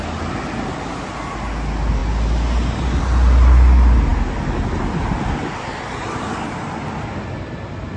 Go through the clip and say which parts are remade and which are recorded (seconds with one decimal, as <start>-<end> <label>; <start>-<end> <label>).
0.0-8.0 recorded